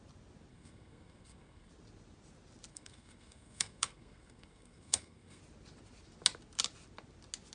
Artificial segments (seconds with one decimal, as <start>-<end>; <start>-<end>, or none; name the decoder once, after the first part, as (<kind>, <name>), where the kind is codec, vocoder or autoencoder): 0.5-1.7 (codec, SNAC); 2.7-5.4